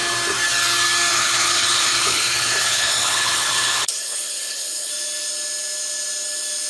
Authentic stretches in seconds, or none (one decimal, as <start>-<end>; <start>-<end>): 0.0-1.1; 4.9-6.7